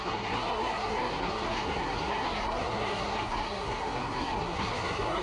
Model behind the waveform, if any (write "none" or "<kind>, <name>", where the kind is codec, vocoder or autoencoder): codec, SNAC